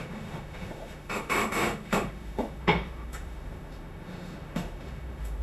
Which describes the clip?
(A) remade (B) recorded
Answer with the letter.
A